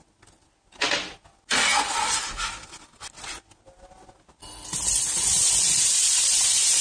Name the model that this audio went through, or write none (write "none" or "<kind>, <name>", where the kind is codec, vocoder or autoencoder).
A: none